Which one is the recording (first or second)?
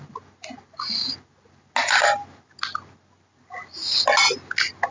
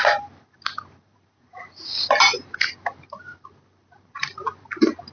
first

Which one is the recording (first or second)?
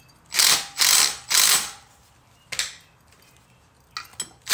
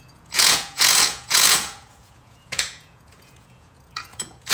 first